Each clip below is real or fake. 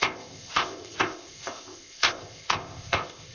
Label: fake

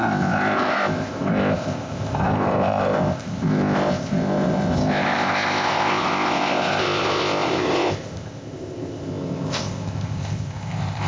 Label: fake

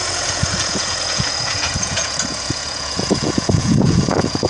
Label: fake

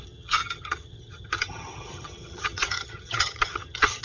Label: fake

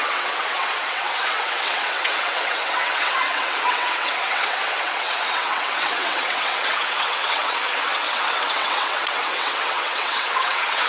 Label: fake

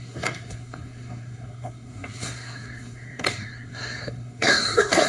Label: fake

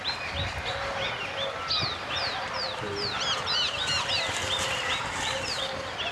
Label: real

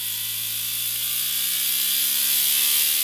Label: real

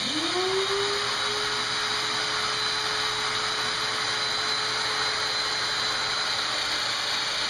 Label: real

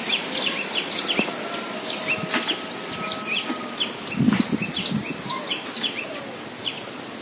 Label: real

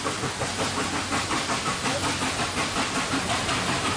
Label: real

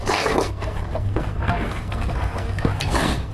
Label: fake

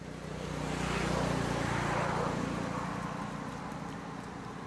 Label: real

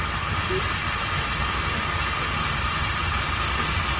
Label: real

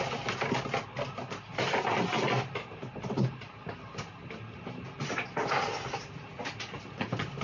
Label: real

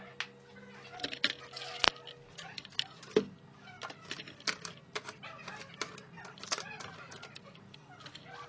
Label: real